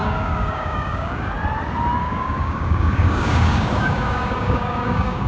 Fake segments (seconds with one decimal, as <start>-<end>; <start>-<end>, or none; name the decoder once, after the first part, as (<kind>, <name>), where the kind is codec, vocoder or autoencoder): 0.0-1.3 (codec, DAC); 2.0-5.3